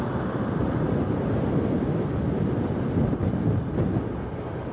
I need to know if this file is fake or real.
real